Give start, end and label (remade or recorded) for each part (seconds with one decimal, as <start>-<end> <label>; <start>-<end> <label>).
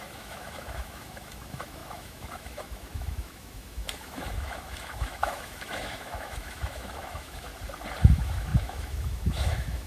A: 0.0-7.5 remade; 7.5-8.0 recorded; 8.0-9.9 remade